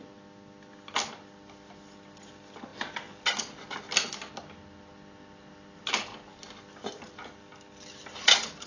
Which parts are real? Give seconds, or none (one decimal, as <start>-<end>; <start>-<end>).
0.0-8.7